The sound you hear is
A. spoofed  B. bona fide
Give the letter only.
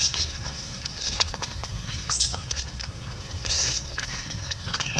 A